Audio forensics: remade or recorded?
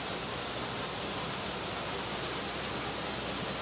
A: recorded